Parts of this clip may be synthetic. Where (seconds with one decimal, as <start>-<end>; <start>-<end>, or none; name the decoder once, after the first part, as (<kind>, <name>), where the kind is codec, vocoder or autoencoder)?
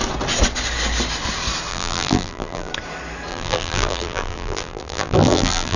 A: 1.7-2.7 (vocoder, BigVGAN v2); 3.3-5.8